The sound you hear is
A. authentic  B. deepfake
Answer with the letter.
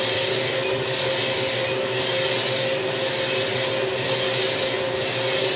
A